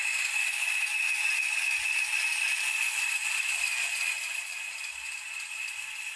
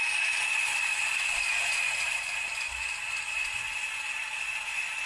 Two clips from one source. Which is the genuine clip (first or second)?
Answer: second